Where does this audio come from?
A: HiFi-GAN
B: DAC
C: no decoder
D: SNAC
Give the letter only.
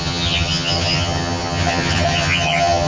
A